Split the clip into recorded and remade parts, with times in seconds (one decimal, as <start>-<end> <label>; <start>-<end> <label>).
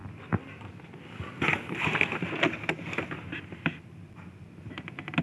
0.0-5.2 recorded